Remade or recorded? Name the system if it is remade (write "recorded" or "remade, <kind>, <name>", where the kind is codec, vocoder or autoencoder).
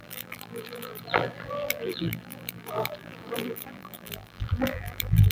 remade, vocoder, BigVGAN v2